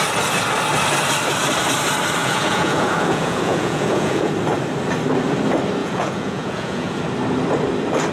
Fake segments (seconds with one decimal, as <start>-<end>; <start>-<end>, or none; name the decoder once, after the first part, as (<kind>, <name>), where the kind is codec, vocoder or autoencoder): 2.2-4.3 (vocoder, Vocos); 5.8-7.0